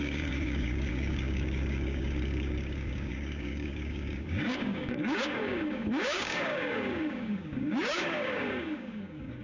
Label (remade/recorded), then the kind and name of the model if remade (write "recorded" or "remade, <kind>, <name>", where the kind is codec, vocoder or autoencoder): remade, codec, DAC